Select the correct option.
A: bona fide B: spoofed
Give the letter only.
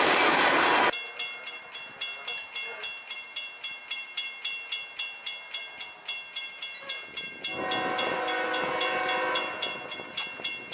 A